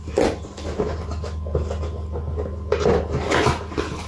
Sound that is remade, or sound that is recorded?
recorded